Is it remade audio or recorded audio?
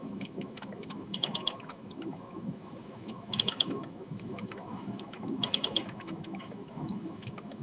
remade